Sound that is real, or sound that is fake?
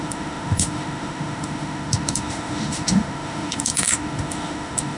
fake